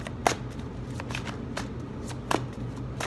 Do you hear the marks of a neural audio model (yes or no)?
no